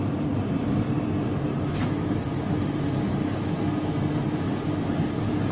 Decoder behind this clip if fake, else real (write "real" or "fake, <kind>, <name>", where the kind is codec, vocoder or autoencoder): real